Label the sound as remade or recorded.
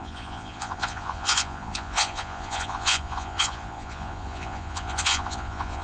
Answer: remade